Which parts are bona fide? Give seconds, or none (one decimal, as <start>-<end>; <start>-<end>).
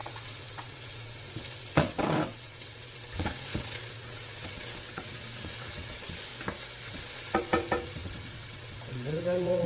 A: 6.3-6.9